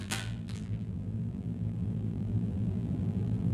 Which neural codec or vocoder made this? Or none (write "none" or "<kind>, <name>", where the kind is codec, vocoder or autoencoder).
vocoder, BigVGAN v2